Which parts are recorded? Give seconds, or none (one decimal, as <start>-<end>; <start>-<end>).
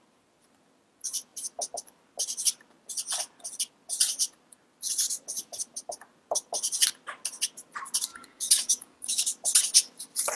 0.0-8.1; 9.2-10.4